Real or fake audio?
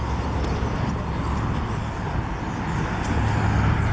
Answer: real